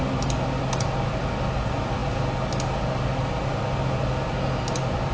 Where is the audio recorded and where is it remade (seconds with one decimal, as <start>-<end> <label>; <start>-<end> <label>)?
0.0-5.1 recorded